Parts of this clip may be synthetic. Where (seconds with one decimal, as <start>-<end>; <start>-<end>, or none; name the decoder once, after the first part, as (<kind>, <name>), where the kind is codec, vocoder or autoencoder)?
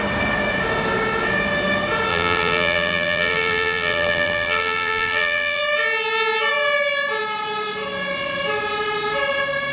2.1-5.6 (vocoder, BigVGAN v2)